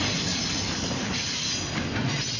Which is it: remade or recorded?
recorded